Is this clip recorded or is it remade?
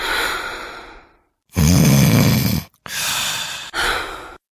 recorded